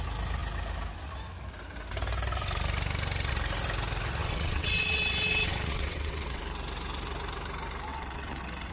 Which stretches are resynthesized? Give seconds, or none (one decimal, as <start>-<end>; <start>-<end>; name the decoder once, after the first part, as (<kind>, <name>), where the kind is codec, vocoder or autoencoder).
4.2-6.4 (vocoder, WaveNeXt); 7.9-8.7